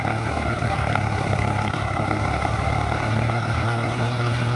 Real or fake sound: fake